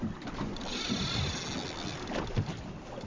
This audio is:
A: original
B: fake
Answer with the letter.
A